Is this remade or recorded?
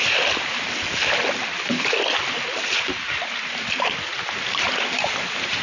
recorded